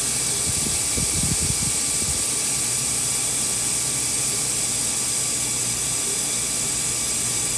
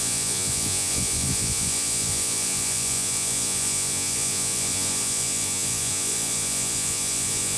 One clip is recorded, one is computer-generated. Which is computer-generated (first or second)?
second